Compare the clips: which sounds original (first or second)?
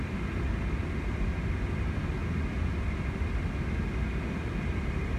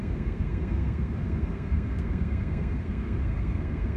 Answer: first